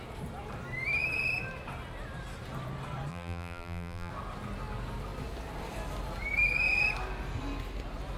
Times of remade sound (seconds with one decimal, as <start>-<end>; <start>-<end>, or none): 3.1-4.1